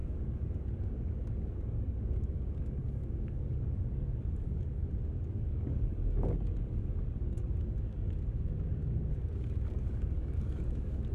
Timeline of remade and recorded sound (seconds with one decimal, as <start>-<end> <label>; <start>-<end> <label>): 0.0-11.1 remade